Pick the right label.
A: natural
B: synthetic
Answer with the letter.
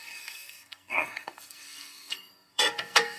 B